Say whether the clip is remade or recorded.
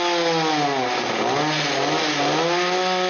recorded